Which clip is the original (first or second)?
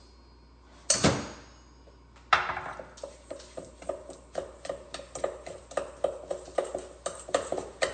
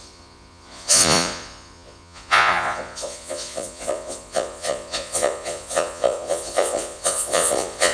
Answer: first